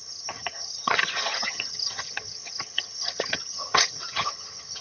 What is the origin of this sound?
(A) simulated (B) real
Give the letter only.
A